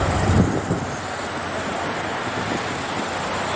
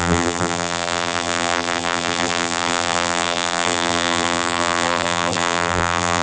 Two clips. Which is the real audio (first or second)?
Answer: first